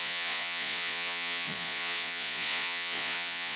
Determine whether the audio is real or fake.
fake